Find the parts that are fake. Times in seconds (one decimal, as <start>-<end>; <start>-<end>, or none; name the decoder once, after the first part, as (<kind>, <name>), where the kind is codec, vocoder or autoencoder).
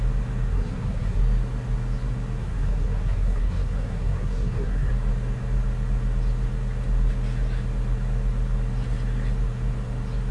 0.5-1.2 (codec, SNAC); 2.4-4.9